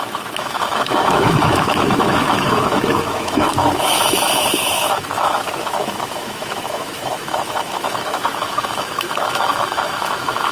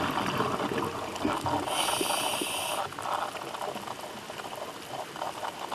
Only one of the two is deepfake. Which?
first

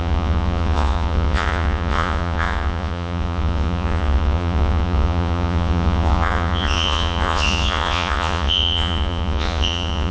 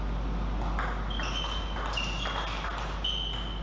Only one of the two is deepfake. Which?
first